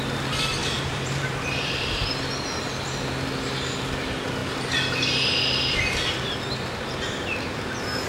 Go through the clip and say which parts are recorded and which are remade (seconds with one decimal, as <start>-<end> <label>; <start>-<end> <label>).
0.0-0.6 recorded; 0.6-1.2 remade; 1.2-8.1 recorded